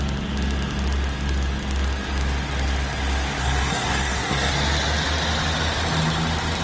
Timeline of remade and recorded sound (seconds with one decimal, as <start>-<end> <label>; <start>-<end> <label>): 0.0-3.4 recorded; 3.4-4.5 remade; 4.5-6.6 recorded